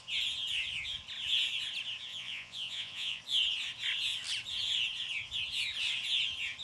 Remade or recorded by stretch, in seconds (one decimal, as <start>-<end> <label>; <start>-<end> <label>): 0.0-2.1 recorded; 2.1-3.2 remade; 3.2-6.6 recorded